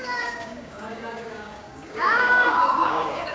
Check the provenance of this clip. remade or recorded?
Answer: remade